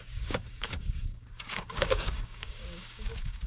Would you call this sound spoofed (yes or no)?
yes